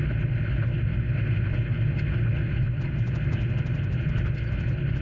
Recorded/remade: recorded